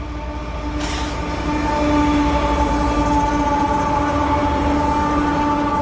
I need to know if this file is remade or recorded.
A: recorded